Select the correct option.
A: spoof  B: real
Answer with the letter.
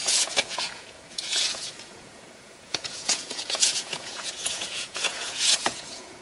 A